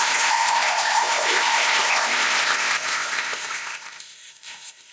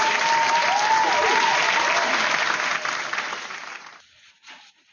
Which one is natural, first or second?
second